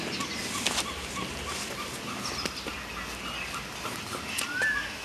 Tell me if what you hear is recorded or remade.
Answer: recorded